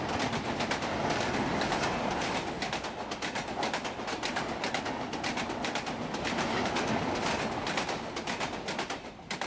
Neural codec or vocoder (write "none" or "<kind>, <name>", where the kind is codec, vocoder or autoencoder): none